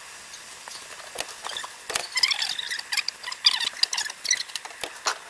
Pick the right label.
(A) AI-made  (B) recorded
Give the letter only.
B